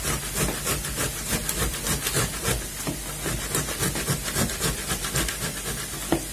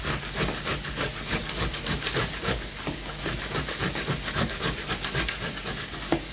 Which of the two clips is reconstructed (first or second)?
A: second